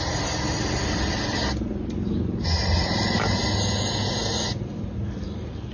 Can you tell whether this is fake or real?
real